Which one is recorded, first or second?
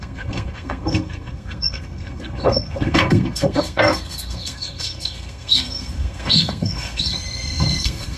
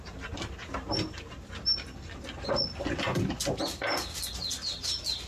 second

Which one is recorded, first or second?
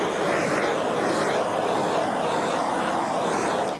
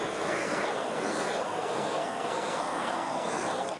first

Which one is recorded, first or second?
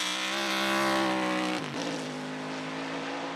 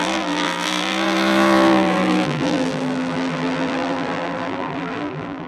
first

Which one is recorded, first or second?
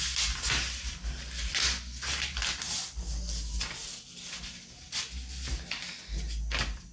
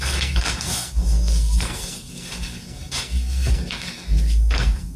first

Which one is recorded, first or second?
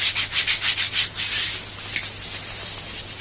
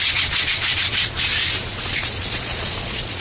first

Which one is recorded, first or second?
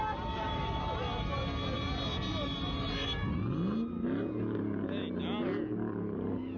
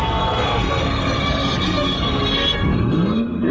first